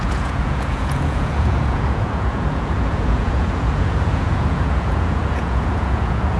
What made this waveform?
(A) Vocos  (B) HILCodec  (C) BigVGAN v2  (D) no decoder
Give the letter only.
A